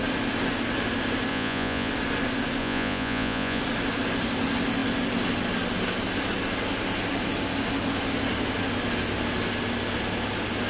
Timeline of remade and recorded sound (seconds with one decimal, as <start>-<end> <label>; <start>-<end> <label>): 0.0-1.3 recorded; 1.3-1.9 remade; 1.9-2.6 recorded; 2.6-3.6 remade; 3.6-10.7 recorded